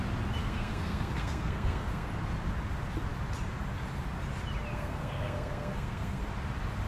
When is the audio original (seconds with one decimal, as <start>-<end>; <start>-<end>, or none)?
0.0-0.4; 2.1-4.7; 6.2-6.9